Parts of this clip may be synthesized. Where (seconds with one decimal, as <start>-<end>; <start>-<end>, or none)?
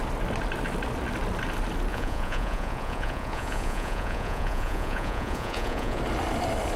1.9-6.0